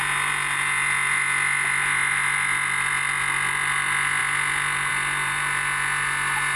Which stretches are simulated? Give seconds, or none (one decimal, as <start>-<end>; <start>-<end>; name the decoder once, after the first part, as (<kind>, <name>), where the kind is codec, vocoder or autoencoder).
none